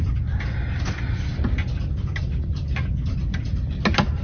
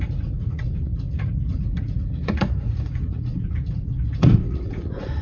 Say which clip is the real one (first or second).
first